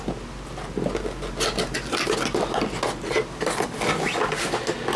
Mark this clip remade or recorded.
recorded